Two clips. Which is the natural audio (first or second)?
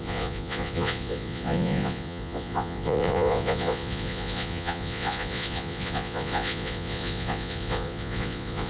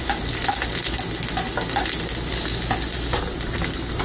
second